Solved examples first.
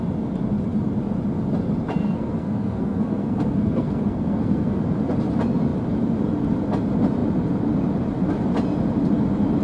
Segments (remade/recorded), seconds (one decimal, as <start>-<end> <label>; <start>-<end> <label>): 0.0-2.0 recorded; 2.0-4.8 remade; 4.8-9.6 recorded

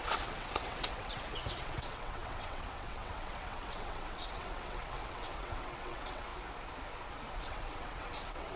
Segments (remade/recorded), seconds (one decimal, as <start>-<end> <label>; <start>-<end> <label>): 0.0-6.3 remade; 6.3-7.4 recorded; 7.4-8.6 remade

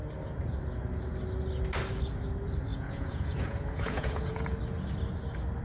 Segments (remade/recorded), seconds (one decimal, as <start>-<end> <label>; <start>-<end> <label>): 0.0-2.7 recorded; 2.7-4.6 remade; 4.6-5.6 recorded